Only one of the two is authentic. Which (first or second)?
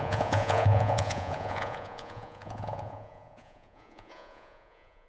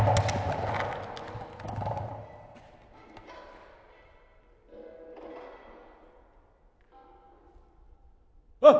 second